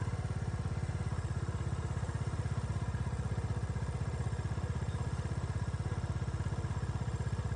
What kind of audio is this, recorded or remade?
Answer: recorded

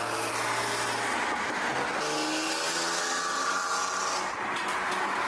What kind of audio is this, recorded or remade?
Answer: recorded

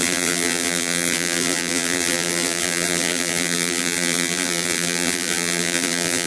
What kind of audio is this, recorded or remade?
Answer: remade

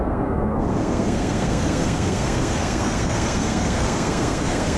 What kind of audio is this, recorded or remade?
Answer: remade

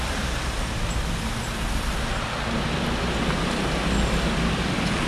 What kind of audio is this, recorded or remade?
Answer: recorded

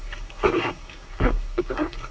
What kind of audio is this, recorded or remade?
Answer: remade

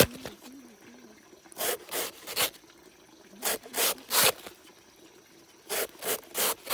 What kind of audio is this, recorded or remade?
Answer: recorded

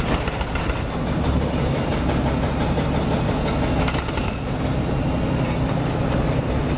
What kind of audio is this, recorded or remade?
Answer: recorded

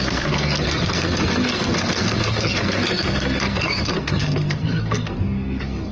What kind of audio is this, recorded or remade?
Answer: remade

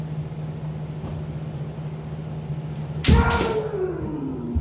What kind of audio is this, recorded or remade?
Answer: recorded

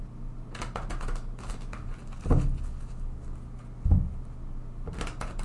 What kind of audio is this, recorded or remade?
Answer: recorded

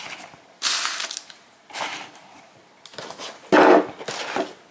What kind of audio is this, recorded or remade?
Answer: recorded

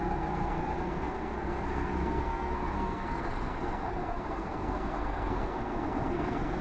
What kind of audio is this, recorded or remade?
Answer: remade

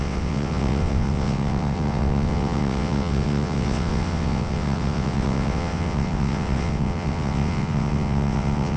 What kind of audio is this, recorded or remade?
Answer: remade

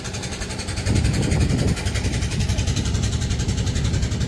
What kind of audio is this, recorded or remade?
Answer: remade